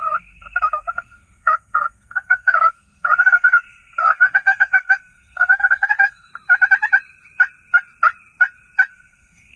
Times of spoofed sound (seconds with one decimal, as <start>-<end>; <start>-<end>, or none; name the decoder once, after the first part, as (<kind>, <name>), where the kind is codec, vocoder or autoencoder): 0.0-6.3 (codec, SNAC); 8.9-9.6